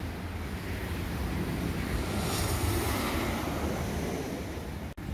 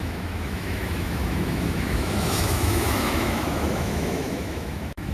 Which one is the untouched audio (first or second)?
first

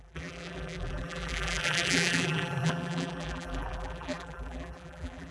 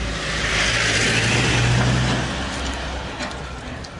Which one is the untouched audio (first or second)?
second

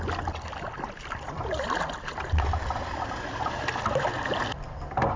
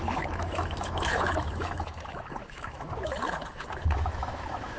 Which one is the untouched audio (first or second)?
first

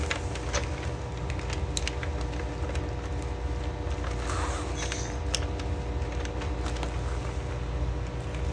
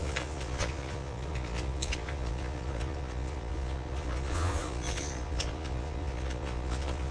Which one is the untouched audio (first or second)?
first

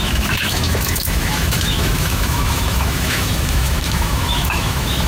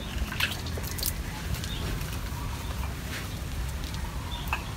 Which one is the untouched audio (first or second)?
second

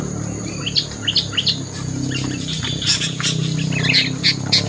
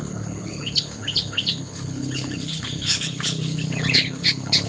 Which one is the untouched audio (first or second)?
first